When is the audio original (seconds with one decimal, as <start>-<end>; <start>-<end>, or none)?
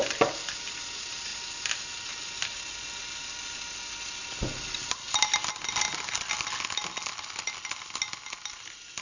0.0-9.0